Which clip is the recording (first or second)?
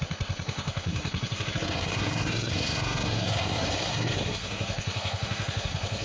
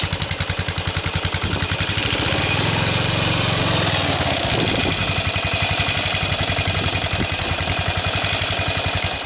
second